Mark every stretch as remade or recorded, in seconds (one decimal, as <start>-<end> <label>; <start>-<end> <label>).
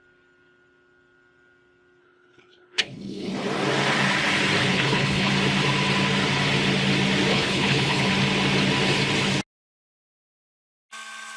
0.0-2.0 recorded; 2.0-3.3 remade; 3.3-4.7 recorded; 4.7-5.3 remade; 5.3-7.3 recorded; 7.3-8.1 remade; 8.1-11.4 recorded